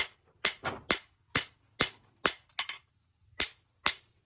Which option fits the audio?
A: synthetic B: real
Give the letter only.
B